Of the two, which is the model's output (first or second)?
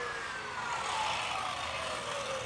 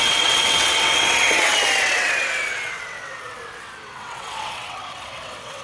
second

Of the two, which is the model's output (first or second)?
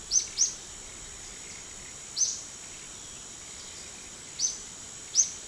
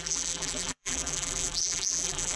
second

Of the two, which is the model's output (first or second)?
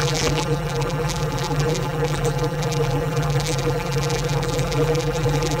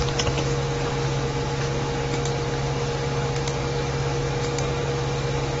first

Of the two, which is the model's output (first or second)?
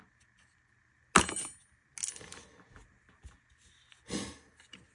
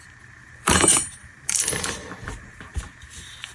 second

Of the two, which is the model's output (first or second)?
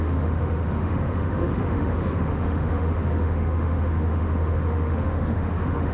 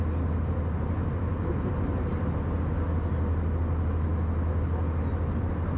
first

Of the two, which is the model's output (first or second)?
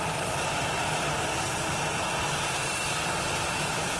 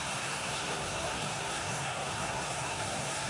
second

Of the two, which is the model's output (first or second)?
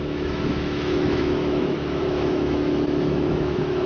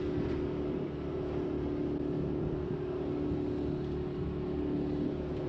first